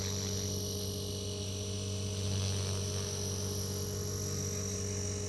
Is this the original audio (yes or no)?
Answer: yes